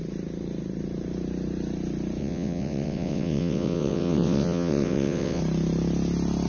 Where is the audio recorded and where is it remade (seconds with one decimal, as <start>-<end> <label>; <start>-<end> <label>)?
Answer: 0.0-2.2 recorded; 2.2-5.4 remade; 5.4-6.5 recorded